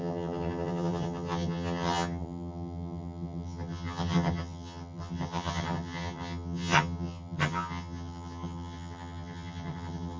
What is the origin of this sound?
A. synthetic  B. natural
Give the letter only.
A